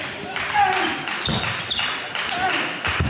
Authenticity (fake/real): real